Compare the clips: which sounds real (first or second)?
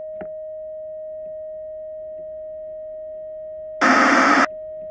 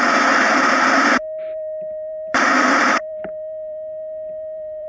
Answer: first